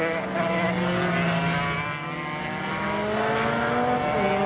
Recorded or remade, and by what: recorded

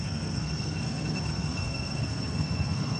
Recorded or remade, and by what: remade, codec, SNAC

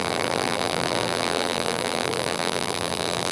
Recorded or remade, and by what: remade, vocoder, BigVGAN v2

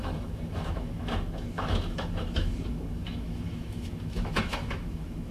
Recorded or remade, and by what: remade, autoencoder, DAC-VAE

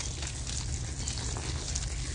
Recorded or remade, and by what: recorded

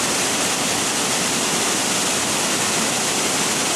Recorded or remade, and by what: recorded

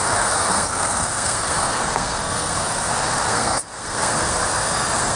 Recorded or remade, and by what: remade, codec, SNAC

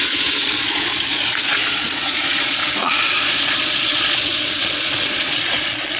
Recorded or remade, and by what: remade, vocoder, Vocos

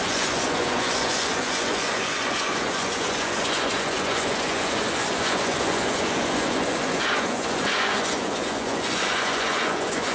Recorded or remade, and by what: remade, vocoder, Vocos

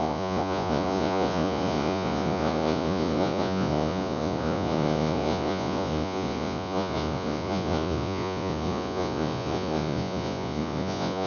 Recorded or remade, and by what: remade, vocoder, Vocos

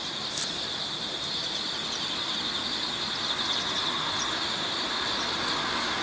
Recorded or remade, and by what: recorded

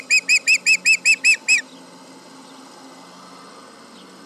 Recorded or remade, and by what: recorded